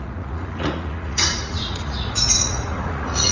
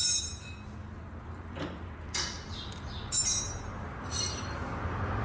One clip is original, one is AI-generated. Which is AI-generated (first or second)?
first